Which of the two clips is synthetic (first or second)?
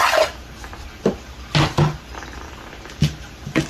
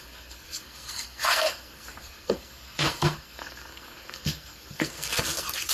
second